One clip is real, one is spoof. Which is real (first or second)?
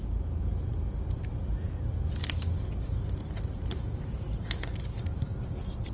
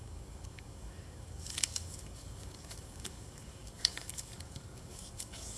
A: first